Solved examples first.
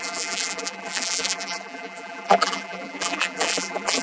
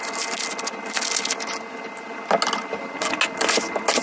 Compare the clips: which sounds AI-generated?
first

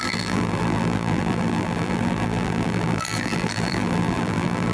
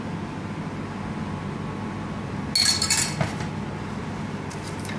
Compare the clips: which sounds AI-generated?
first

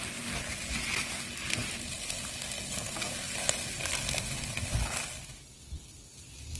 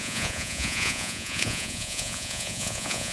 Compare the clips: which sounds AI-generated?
second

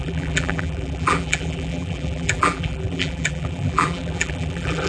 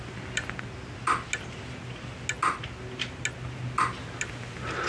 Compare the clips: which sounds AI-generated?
first